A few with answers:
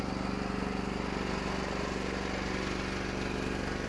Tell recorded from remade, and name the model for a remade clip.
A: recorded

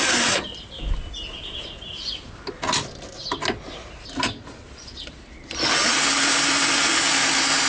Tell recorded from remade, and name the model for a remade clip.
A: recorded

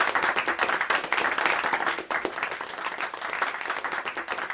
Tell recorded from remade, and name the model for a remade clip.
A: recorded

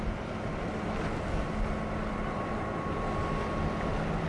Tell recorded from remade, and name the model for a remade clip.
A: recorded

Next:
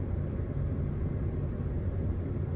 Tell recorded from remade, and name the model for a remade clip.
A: recorded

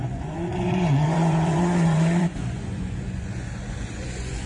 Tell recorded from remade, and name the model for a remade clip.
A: remade, vocoder, Vocos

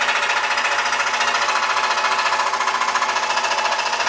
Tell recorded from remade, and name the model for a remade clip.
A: recorded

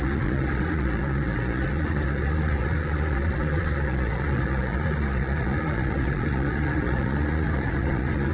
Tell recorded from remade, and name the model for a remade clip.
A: remade, vocoder, Vocos